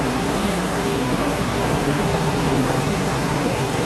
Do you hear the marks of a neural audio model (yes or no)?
yes